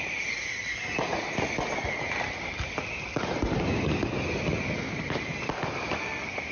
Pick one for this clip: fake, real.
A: real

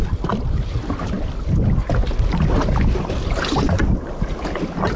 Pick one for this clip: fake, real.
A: real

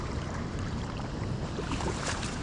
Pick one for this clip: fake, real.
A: fake